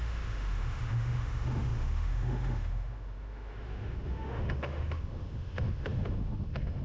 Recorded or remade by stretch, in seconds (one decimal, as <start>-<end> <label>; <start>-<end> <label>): 0.0-6.8 remade